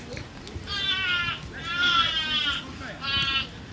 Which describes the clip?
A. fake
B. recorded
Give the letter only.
B